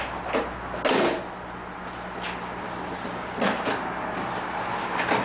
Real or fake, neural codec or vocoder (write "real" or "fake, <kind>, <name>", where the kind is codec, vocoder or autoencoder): real